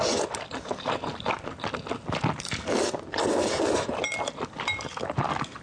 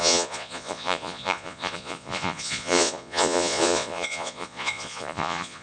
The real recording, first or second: first